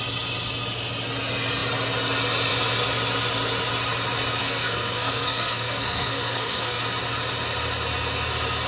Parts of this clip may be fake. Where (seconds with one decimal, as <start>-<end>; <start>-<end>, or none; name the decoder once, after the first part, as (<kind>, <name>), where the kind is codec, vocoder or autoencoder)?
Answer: 4.4-6.8 (codec, SNAC)